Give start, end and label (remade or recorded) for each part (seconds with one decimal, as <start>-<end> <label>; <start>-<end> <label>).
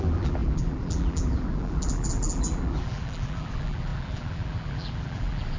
0.0-5.6 remade